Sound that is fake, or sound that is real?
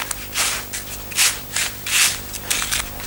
real